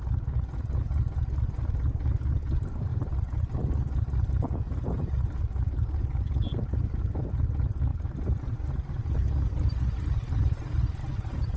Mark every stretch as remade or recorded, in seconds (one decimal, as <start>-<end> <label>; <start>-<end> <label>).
0.0-7.9 recorded; 7.9-8.4 remade; 8.4-11.6 recorded